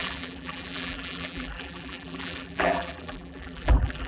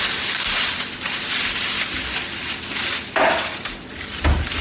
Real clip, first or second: second